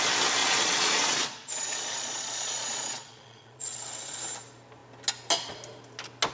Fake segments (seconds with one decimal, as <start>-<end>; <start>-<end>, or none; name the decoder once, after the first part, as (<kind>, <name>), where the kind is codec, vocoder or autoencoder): 0.4-4.2 (vocoder, Vocos)